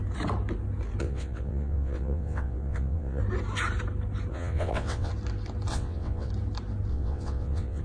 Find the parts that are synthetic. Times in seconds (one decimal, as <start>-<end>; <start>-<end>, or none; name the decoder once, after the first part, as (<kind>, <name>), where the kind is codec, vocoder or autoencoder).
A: 1.0-3.2 (vocoder, WaveNeXt); 4.3-5.1; 5.7-6.3; 6.9-7.8